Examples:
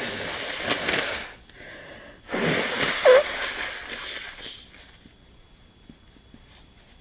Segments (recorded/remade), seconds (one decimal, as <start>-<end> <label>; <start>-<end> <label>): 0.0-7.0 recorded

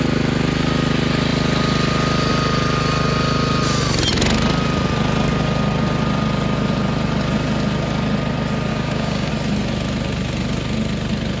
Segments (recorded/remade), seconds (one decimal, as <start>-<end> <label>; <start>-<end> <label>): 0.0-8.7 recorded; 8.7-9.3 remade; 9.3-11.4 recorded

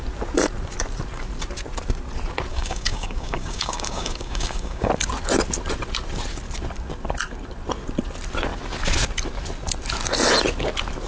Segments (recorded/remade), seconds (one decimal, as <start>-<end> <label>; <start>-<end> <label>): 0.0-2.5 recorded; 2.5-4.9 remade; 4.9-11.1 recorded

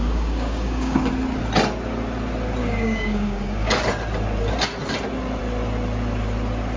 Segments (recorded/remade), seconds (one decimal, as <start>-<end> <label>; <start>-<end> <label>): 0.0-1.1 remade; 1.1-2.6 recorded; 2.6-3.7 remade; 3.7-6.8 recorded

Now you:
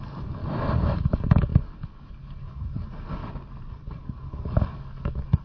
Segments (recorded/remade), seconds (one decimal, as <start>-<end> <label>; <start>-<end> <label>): 0.0-0.4 remade; 0.4-0.9 recorded; 0.9-3.2 remade; 3.2-3.7 recorded; 3.7-5.4 remade